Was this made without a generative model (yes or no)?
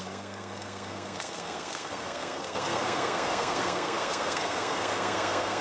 no